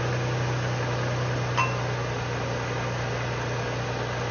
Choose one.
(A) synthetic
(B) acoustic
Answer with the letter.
B